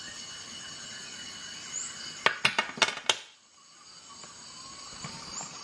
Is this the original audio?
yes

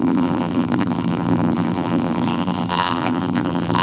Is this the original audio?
no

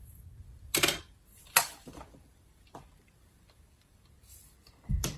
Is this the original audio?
no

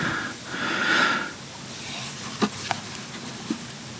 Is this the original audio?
yes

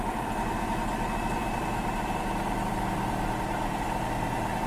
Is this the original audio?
no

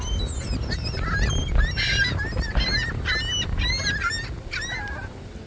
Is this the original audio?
yes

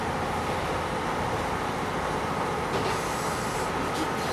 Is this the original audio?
yes